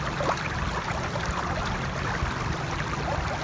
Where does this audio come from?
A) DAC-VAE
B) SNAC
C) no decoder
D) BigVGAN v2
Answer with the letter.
C